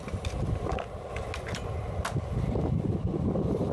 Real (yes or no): yes